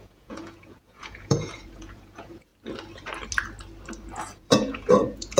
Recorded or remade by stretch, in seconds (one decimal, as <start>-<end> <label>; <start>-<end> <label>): 0.0-2.5 remade; 2.5-4.2 recorded; 4.2-5.4 remade